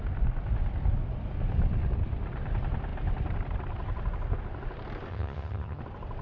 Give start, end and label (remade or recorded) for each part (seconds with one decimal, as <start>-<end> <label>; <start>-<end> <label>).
0.0-5.1 recorded; 5.1-5.8 remade; 5.8-6.2 recorded